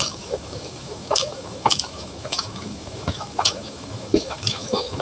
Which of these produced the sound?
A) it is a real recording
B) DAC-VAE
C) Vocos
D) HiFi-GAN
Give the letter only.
B